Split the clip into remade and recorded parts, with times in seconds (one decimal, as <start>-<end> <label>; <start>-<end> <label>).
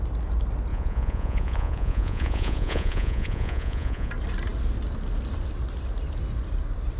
0.0-0.7 recorded; 0.7-4.1 remade; 4.1-7.0 recorded